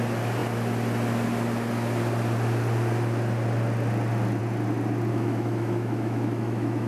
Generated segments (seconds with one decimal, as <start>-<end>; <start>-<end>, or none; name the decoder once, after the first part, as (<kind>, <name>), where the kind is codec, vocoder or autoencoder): 5.1-6.9 (autoencoder, DAC-VAE)